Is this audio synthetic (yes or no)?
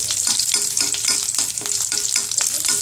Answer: no